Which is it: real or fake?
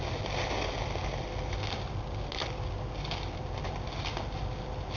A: real